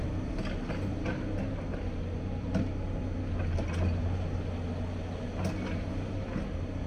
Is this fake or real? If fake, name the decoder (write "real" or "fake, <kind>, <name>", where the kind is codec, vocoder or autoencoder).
real